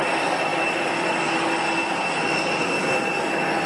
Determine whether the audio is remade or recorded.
recorded